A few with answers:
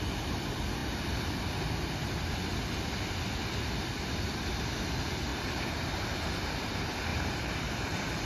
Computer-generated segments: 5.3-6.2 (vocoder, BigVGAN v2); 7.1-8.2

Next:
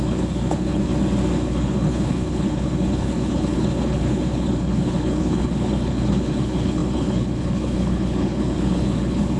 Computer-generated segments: 0.0-0.9 (codec, HILCodec); 1.5-9.4

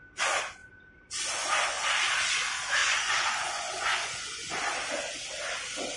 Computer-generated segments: 2.8-4.5 (vocoder, Vocos)

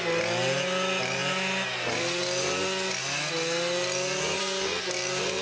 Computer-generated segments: none

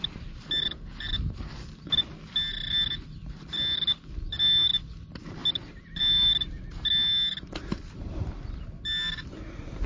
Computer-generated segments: none